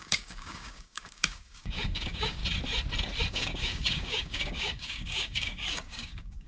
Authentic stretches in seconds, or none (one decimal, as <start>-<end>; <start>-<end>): 2.4-3.3